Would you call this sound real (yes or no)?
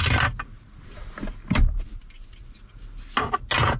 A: yes